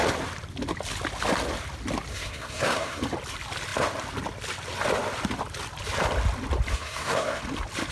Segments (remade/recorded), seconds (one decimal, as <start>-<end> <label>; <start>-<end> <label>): 0.0-2.1 recorded; 2.1-3.0 remade; 3.0-6.7 recorded; 6.7-7.4 remade; 7.4-7.9 recorded